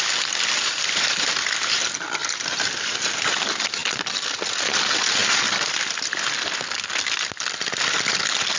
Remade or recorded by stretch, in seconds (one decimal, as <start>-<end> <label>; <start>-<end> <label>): 0.0-8.6 recorded